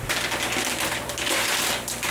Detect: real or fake real